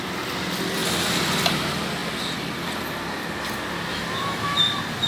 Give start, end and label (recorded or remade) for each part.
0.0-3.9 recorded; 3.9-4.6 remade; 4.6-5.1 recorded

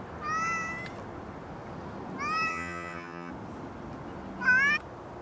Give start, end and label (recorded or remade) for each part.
0.0-2.5 recorded; 2.5-3.3 remade; 3.3-5.2 recorded

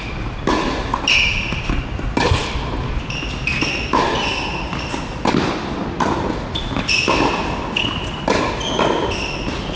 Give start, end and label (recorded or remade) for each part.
0.0-1.1 recorded; 1.1-1.7 remade; 1.7-9.8 recorded

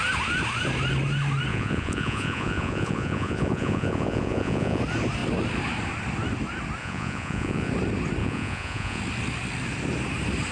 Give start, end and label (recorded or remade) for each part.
0.0-1.5 recorded; 1.5-4.8 remade; 4.8-6.8 recorded; 6.8-7.7 remade; 7.7-8.2 recorded; 8.2-9.0 remade; 9.0-10.5 recorded

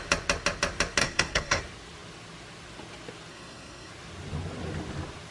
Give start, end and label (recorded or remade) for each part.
0.0-1.0 recorded; 1.0-1.6 remade; 1.6-3.3 recorded; 3.3-3.9 remade; 3.9-5.3 recorded

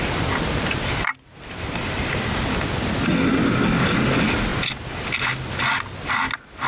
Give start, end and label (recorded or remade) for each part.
0.0-6.7 recorded

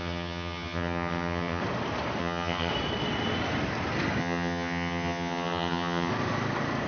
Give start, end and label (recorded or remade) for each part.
0.0-1.6 remade; 1.6-2.2 recorded; 2.2-2.7 remade; 2.7-4.2 recorded; 4.2-6.1 remade; 6.1-6.9 recorded